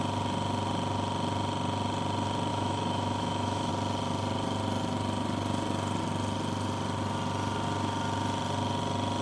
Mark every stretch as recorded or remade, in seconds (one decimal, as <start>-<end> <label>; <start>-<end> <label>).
0.0-2.5 recorded; 2.5-3.7 remade; 3.7-9.2 recorded